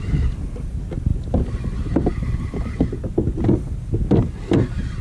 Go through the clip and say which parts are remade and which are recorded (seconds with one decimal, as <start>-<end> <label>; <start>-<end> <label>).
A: 0.0-5.0 recorded